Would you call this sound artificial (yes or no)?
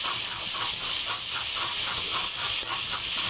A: no